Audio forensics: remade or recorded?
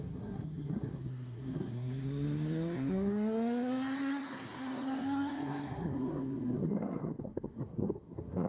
remade